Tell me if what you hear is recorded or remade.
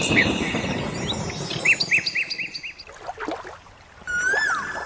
recorded